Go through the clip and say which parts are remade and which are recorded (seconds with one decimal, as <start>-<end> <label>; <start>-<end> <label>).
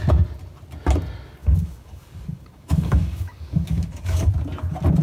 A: 0.0-1.4 recorded; 1.4-4.3 remade; 4.3-5.0 recorded